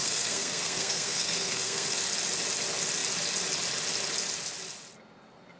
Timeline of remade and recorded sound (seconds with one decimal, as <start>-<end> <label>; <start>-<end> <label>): 0.0-2.0 remade; 2.0-5.6 recorded